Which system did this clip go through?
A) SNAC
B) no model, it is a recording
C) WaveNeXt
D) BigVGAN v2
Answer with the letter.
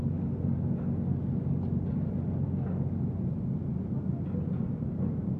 B